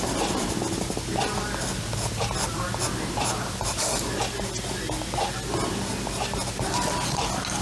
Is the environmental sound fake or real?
real